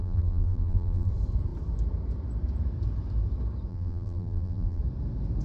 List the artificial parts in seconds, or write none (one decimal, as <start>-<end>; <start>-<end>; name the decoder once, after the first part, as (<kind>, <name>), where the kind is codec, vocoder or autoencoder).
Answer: 0.0-1.1 (vocoder, BigVGAN v2); 3.7-4.8